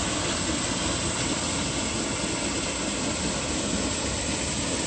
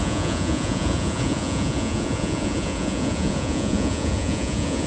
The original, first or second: first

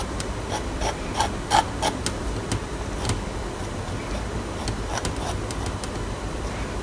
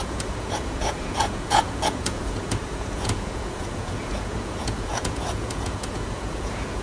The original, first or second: first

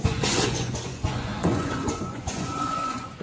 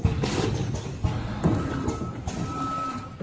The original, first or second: second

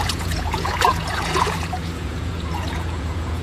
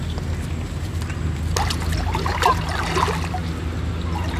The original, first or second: second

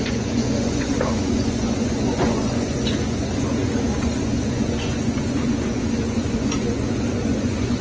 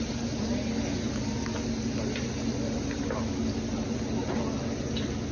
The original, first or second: second